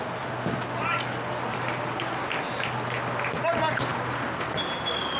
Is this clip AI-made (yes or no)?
no